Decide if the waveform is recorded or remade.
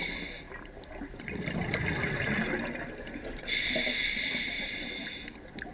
recorded